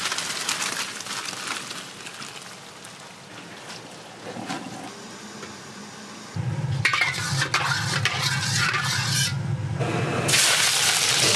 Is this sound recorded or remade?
recorded